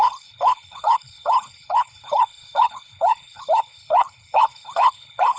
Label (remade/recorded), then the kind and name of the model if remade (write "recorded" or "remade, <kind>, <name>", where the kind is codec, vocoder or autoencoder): remade, codec, HILCodec